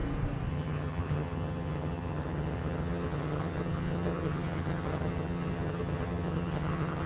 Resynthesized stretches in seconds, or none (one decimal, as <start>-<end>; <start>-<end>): 0.5-7.1